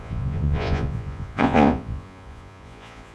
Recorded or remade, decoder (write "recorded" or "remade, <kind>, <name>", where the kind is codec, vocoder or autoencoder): remade, vocoder, Vocos